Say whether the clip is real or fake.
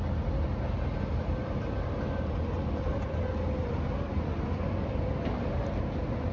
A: real